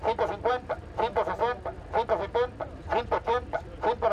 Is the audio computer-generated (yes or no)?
no